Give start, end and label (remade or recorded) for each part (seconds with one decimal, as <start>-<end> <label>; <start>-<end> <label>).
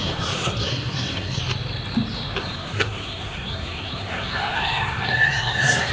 0.0-1.4 remade; 1.4-2.4 recorded; 2.4-5.9 remade